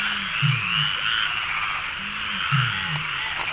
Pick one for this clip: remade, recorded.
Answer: recorded